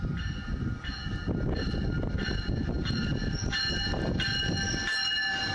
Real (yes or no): yes